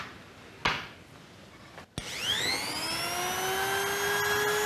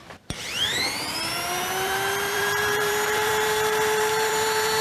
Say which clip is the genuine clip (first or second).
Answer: first